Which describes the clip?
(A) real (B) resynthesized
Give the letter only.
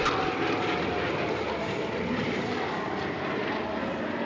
A